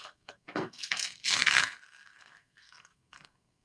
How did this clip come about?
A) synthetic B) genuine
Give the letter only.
A